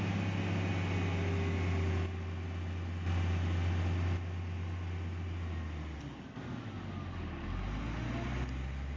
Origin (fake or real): real